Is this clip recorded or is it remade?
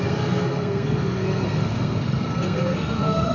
remade